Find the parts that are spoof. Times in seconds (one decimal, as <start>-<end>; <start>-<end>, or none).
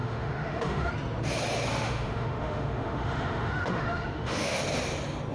0.0-0.9; 1.7-4.6